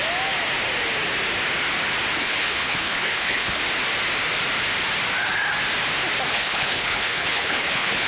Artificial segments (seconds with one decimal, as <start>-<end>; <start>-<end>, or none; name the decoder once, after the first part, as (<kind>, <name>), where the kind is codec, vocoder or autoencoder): 2.2-3.6 (codec, HILCodec); 6.3-8.1